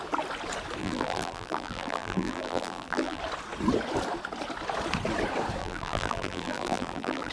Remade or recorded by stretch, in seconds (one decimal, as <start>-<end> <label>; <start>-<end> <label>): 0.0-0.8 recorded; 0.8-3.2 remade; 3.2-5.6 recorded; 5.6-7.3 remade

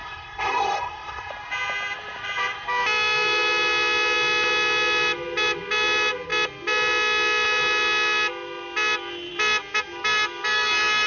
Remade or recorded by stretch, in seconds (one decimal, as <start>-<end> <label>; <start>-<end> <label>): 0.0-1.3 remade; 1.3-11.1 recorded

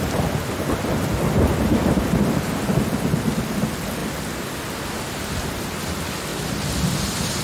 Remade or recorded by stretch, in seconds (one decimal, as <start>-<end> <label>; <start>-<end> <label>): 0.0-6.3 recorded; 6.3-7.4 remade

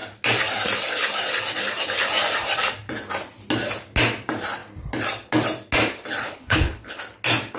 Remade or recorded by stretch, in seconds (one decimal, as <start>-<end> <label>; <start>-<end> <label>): 0.0-6.2 recorded; 6.2-7.0 remade; 7.0-7.6 recorded